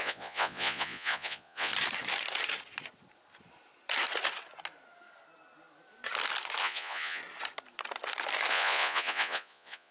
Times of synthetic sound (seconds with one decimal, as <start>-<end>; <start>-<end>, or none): 0.0-1.7; 6.6-7.2; 8.5-9.9